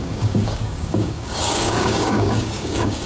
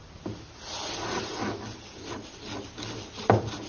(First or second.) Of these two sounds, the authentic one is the second